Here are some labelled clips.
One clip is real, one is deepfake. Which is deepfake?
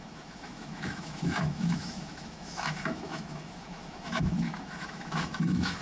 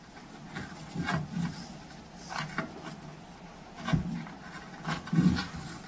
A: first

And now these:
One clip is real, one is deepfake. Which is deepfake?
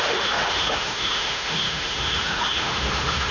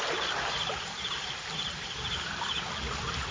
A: first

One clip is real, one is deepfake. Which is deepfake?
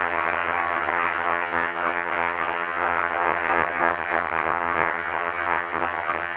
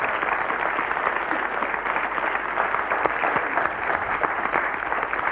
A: first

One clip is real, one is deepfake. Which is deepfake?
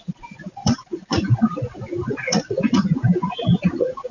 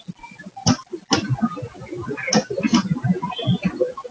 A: first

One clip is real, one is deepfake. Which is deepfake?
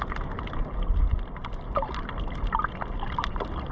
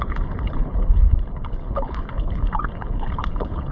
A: second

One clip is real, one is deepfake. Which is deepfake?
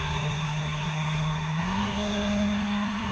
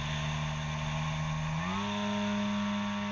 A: first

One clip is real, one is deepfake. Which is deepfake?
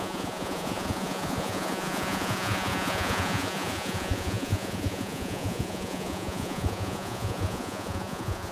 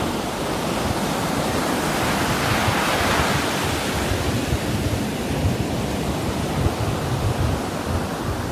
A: first